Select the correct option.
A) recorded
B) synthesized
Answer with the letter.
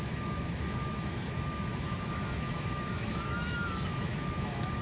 B